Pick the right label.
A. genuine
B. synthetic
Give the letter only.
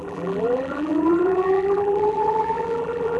B